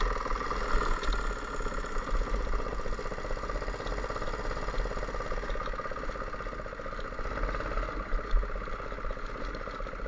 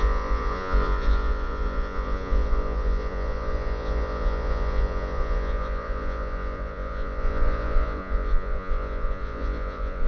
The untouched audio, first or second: first